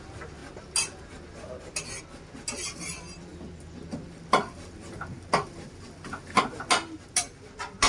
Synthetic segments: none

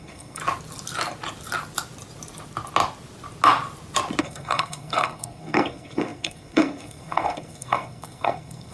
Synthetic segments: 0.0-0.4 (codec, SNAC); 4.2-8.7